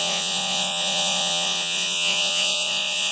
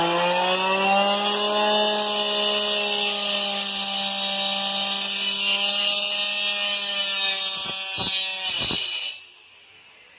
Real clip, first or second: second